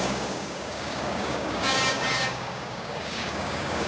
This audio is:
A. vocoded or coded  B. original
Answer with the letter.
A